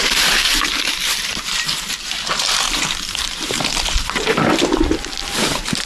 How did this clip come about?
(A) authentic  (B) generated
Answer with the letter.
B